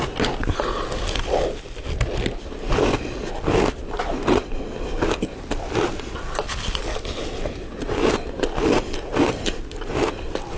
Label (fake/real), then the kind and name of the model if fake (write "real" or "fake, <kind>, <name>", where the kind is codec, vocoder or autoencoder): real